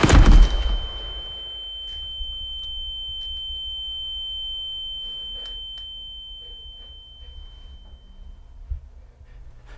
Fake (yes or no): no